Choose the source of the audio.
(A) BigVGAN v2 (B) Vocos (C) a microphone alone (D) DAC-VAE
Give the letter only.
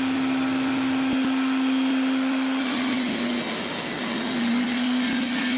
C